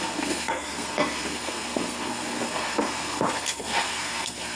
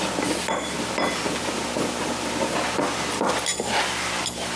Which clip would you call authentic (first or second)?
second